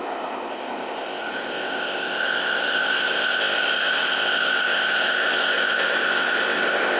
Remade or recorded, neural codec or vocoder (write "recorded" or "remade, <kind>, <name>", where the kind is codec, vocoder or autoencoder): remade, codec, ZipCodec